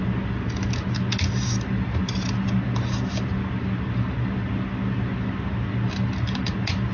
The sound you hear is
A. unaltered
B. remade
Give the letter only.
A